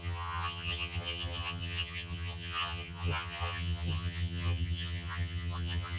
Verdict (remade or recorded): remade